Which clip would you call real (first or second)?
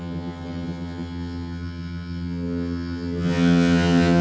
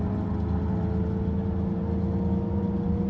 second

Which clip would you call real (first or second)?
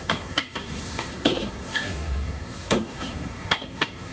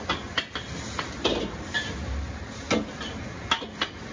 second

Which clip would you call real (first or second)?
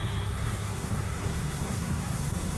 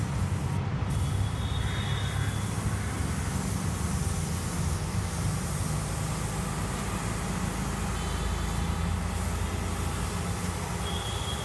second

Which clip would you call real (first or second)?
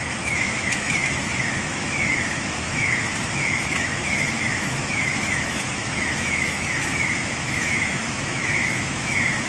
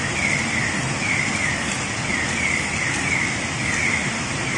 second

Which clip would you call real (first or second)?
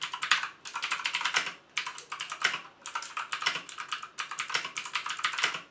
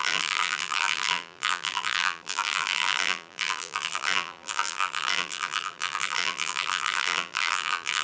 first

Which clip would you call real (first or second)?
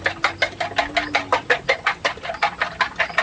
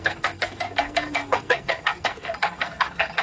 first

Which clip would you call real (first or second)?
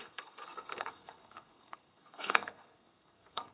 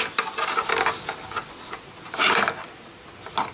second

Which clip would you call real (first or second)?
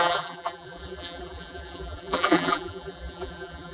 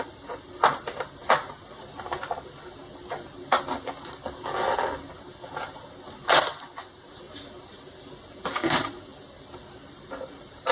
second